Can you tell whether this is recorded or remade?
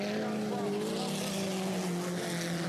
recorded